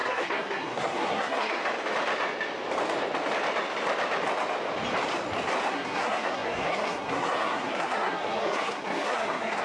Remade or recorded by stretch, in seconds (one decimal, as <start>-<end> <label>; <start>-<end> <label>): 0.0-1.6 remade; 1.6-5.7 recorded; 5.7-9.6 remade